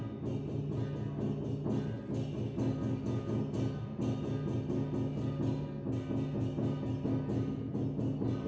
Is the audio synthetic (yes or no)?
no